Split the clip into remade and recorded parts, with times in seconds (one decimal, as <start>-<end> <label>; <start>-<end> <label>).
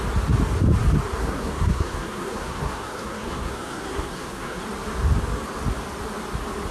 0.0-1.2 recorded; 1.2-4.6 remade; 4.6-6.7 recorded